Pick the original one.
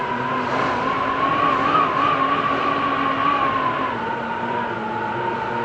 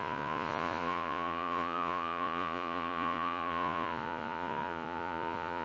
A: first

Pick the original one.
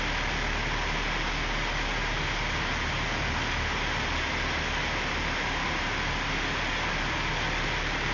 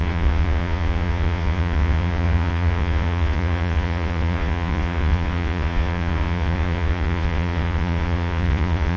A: first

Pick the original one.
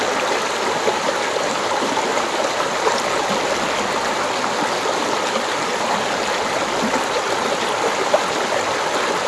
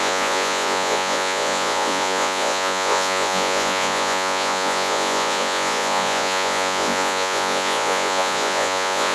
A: first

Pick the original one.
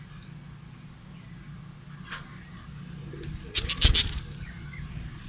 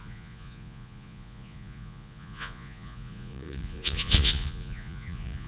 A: first